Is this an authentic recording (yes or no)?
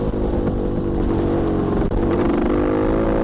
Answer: yes